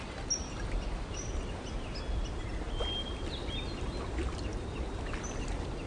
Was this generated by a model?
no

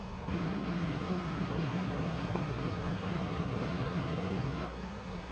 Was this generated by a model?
yes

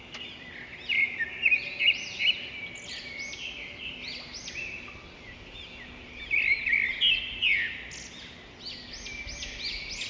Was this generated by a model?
no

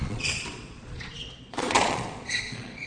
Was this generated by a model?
yes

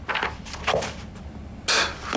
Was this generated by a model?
no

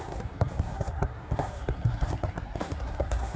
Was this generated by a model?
yes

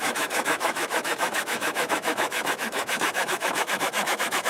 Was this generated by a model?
yes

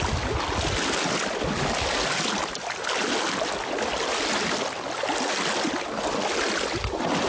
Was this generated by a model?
no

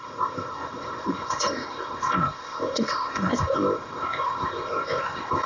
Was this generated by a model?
yes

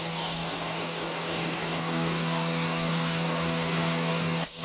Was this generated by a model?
yes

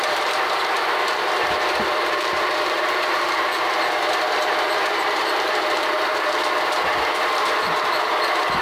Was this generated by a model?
yes